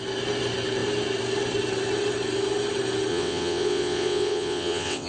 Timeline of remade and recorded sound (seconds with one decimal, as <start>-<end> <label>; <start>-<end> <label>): 0.0-3.1 recorded; 3.1-5.1 remade